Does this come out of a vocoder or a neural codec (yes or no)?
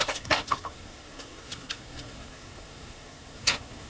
yes